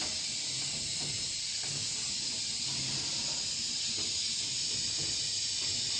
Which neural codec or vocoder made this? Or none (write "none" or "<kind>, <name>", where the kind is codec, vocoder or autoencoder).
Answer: none